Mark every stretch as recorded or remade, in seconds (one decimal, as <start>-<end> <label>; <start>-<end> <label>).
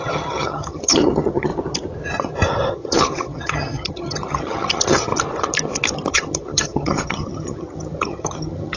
0.0-1.5 remade; 1.5-2.7 recorded; 2.7-5.1 remade; 5.1-6.1 recorded; 6.1-8.8 remade